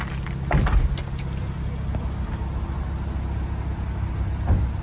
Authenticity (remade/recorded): recorded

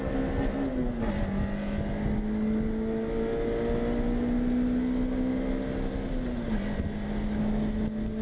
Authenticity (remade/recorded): recorded